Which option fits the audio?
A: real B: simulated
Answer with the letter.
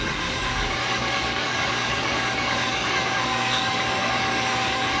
B